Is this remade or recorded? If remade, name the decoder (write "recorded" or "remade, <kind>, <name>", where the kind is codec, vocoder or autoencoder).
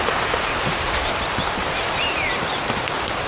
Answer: remade, vocoder, BigVGAN v2